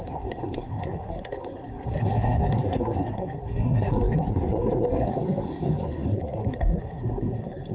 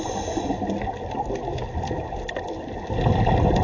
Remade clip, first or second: first